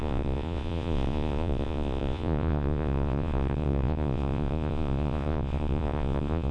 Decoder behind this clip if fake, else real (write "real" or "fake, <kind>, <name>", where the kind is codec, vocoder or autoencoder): fake, vocoder, Vocos